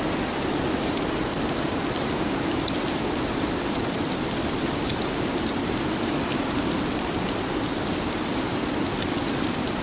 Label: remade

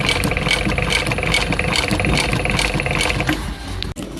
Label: recorded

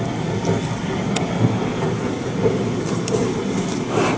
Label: remade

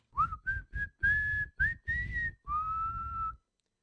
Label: recorded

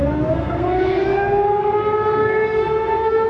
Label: remade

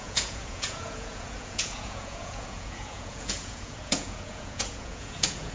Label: remade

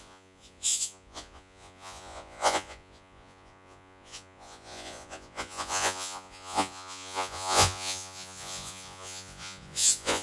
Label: remade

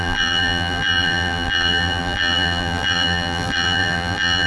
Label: remade